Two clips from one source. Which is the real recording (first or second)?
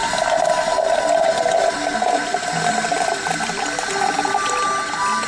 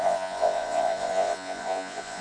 first